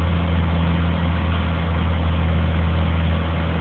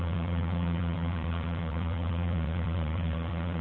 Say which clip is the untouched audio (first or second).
first